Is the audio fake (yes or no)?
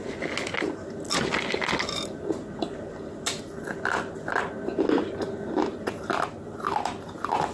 no